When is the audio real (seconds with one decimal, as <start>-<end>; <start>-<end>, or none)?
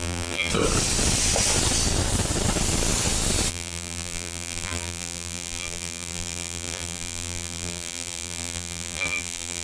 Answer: 0.5-3.5